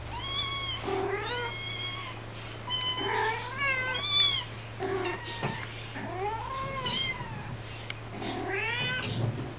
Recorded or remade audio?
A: recorded